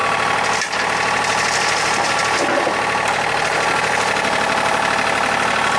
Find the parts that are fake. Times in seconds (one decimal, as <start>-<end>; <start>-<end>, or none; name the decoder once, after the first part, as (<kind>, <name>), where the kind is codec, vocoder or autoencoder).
none